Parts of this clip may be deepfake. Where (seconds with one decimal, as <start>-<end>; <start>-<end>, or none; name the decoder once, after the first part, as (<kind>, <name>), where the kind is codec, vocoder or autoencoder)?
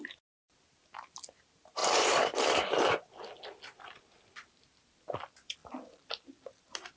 1.8-2.6 (vocoder, BigVGAN v2); 5.6-6.2